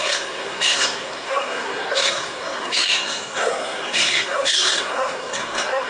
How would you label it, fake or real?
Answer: fake